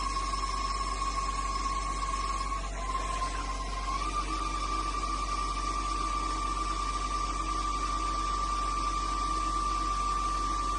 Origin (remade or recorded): recorded